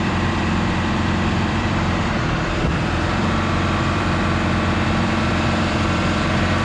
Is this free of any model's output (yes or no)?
no